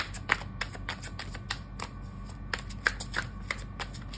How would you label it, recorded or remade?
recorded